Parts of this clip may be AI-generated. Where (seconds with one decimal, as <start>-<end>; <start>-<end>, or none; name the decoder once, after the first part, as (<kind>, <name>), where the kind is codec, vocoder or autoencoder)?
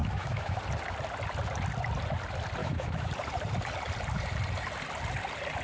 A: 0.0-0.6 (autoencoder, DAC-VAE); 2.6-3.1